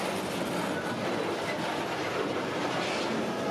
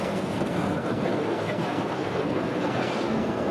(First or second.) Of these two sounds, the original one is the first